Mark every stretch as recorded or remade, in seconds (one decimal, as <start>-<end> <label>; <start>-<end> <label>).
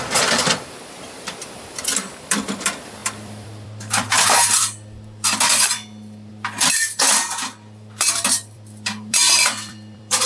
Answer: 0.0-10.3 remade